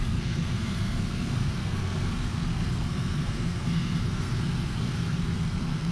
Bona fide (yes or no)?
no